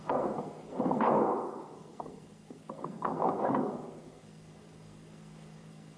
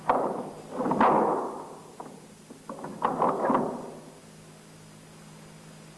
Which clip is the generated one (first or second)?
first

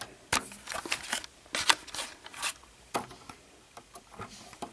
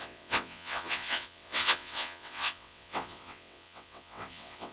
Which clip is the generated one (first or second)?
second